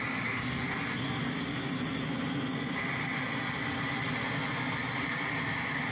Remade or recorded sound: recorded